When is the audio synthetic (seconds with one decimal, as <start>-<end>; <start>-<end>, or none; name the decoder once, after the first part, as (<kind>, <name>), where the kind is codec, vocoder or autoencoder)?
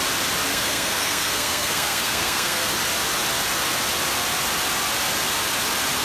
0.5-2.7 (codec, SNAC)